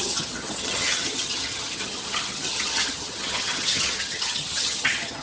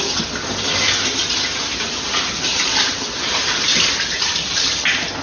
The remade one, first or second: first